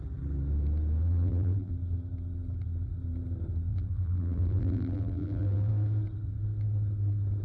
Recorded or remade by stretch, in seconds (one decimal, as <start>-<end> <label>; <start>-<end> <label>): 0.0-1.0 recorded; 1.0-1.7 remade; 1.7-3.7 recorded; 3.7-5.7 remade; 5.7-7.4 recorded